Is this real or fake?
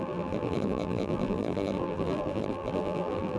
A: fake